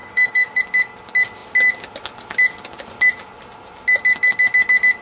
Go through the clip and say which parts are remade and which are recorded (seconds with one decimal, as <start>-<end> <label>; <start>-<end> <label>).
0.0-0.6 remade; 0.6-5.0 recorded